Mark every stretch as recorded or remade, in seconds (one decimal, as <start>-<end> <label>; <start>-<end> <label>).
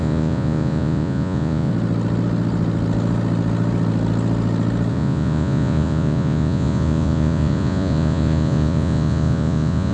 0.0-1.7 remade; 1.7-4.9 recorded; 4.9-9.9 remade